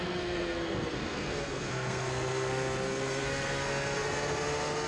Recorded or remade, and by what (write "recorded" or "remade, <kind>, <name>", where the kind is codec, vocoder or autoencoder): remade, codec, SNAC